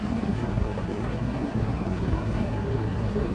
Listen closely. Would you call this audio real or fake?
fake